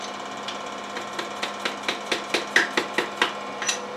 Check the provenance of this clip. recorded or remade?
recorded